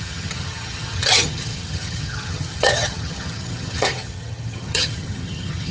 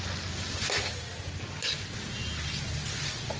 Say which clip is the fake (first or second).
first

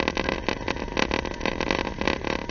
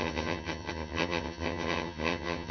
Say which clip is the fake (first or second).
second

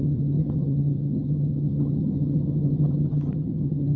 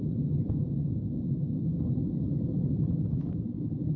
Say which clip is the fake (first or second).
first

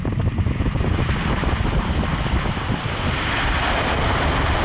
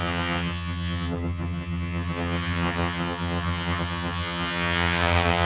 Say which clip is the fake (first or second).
second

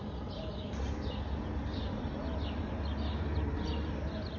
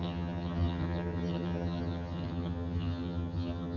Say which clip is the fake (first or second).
second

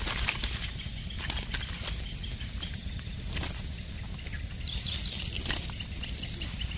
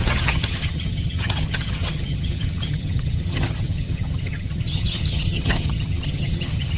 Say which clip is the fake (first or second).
second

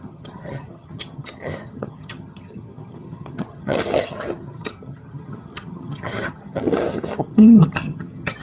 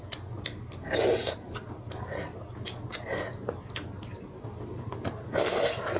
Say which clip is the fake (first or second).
first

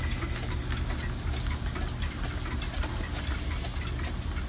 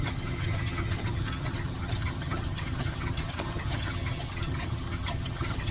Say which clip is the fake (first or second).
second